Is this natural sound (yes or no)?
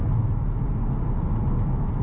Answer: yes